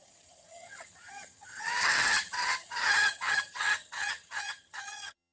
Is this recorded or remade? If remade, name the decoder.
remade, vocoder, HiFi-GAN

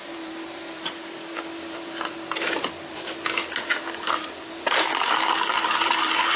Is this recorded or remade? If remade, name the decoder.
remade, vocoder, BigVGAN v2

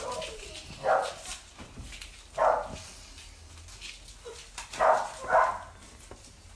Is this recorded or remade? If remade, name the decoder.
recorded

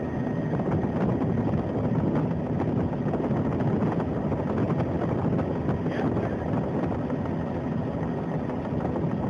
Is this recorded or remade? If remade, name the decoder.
recorded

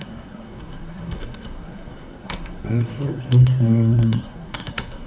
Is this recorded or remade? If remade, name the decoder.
remade, codec, SNAC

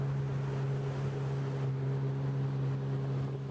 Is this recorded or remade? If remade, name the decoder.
recorded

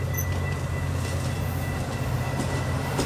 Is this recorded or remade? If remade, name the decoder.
recorded